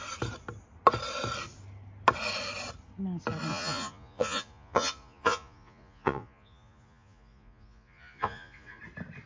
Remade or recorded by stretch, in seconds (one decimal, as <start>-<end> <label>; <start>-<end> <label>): 0.0-3.5 recorded; 3.5-8.8 remade; 8.8-9.3 recorded